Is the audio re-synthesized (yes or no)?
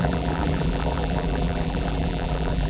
yes